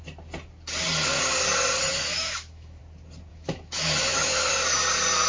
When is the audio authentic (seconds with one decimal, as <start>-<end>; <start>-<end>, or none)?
0.0-1.9; 2.8-3.3; 4.5-5.3